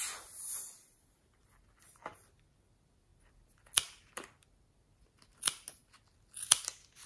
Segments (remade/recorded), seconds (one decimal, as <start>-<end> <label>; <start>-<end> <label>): 0.0-7.1 recorded